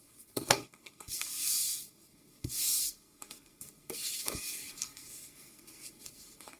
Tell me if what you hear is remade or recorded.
remade